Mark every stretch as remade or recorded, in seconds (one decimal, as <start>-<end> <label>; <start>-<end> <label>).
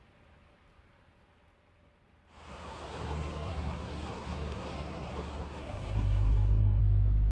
0.0-2.5 recorded; 2.5-6.8 remade; 6.8-7.3 recorded